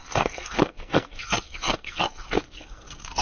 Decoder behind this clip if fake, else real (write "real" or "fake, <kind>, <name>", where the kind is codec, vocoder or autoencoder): fake, codec, SNAC